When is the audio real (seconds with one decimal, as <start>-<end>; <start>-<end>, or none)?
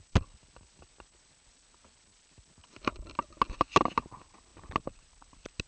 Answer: 0.0-5.7